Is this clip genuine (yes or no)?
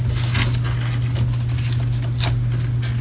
yes